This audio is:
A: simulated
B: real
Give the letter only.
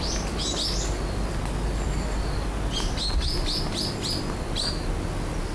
B